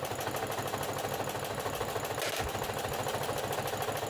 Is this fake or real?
real